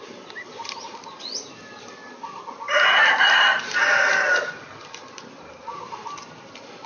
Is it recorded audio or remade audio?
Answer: recorded